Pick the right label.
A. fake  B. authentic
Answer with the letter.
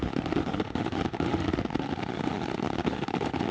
A